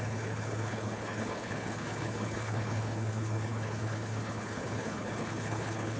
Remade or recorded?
remade